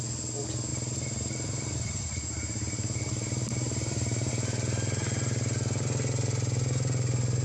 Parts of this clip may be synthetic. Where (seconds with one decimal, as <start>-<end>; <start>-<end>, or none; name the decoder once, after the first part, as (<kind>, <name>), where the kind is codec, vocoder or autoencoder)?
0.7-4.3 (vocoder, BigVGAN v2)